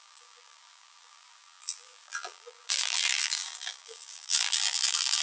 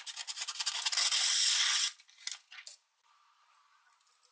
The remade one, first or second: first